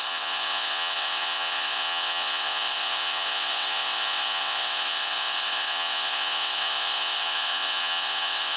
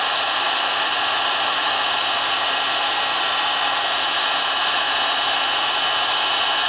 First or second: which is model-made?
first